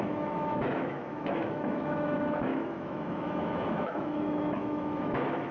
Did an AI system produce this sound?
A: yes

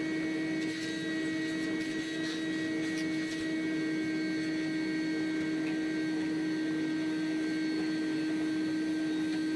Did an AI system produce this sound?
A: no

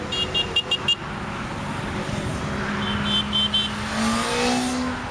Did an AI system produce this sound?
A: no